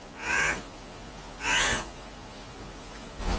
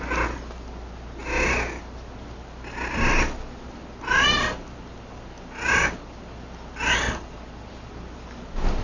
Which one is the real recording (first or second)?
second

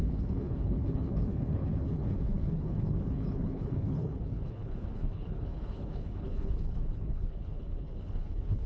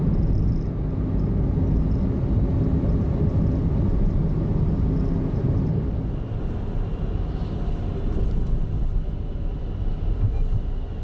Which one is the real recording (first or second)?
second